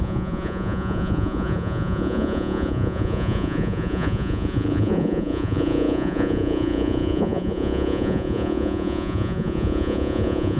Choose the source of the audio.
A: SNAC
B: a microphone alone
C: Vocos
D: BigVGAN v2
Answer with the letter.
C